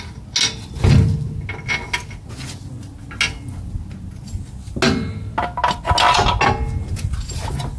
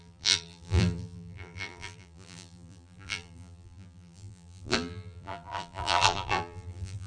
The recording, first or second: first